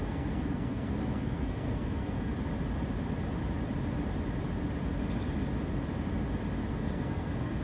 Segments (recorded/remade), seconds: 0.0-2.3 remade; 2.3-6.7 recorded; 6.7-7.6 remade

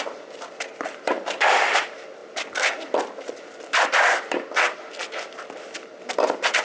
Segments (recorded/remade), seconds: 0.0-6.6 remade

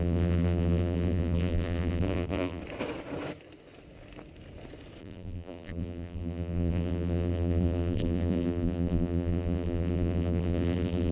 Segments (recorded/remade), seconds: 0.0-2.6 remade; 2.6-5.0 recorded; 5.0-11.1 remade